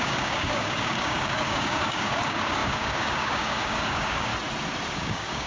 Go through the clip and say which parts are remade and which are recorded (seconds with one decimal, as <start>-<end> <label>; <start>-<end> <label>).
0.0-4.3 remade; 4.3-4.9 recorded; 4.9-5.5 remade